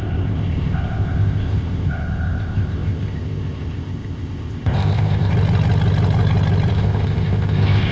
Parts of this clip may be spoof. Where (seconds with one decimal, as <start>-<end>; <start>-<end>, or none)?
0.0-5.3; 6.7-7.9